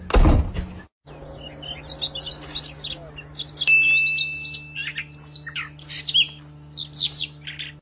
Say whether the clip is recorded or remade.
recorded